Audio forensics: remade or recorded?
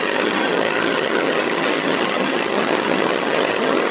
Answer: remade